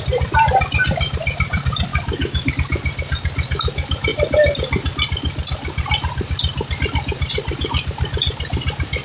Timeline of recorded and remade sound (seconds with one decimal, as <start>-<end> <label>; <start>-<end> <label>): 0.0-1.9 recorded; 1.9-2.5 remade; 2.5-9.0 recorded